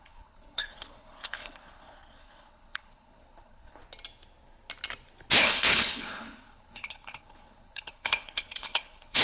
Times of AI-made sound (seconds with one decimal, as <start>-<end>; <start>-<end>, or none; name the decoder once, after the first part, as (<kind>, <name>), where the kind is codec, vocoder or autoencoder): 0.0-3.8 (codec, HILCodec); 5.4-9.2